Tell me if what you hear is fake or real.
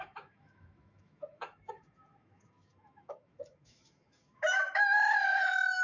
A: fake